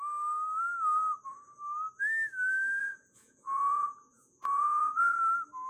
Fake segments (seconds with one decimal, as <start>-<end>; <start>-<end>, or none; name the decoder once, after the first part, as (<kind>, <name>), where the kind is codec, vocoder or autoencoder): 2.8-5.2 (vocoder, Vocos)